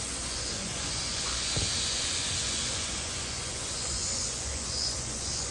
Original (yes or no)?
no